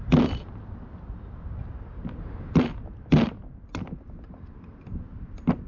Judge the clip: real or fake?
real